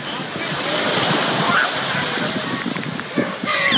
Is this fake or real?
real